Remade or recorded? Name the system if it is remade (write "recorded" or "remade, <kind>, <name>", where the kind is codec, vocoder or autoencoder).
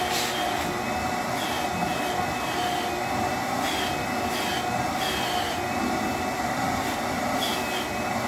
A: recorded